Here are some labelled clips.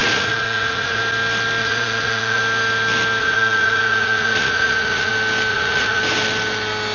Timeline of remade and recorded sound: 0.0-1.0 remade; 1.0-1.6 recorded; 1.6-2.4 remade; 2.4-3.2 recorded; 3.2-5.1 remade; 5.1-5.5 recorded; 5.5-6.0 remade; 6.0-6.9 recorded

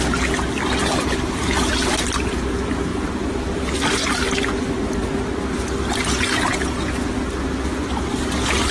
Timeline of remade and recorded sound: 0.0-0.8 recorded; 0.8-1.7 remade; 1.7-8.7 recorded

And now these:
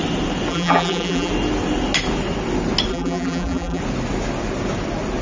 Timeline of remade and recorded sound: 0.0-0.5 recorded; 0.5-1.3 remade; 1.3-2.9 recorded; 2.9-3.8 remade; 3.8-5.2 recorded